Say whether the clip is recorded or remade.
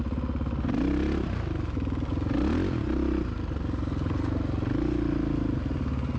recorded